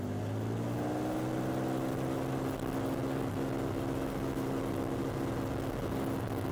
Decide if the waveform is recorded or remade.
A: recorded